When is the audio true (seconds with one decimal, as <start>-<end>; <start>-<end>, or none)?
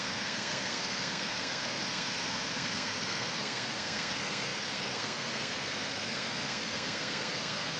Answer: none